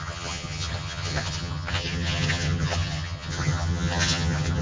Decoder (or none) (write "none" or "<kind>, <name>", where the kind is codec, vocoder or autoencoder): vocoder, HiFi-GAN